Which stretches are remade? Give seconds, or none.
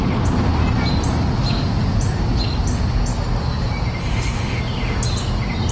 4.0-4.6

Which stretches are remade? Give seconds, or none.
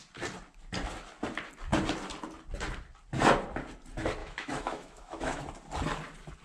4.2-5.4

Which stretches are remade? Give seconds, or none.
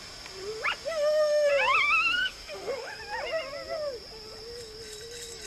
0.9-1.5; 2.2-3.0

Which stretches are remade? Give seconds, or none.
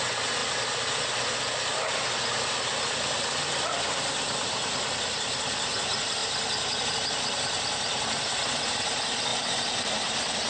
none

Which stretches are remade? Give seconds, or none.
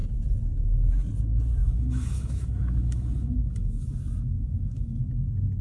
1.6-5.0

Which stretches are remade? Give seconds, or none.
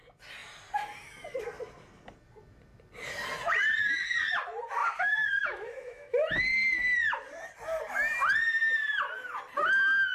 4.8-6.4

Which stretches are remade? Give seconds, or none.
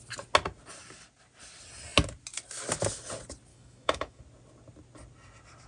3.5-4.2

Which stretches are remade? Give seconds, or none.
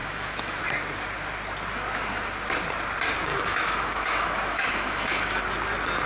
0.0-0.6; 3.3-5.4